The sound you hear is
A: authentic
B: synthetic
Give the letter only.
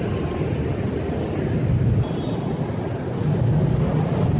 A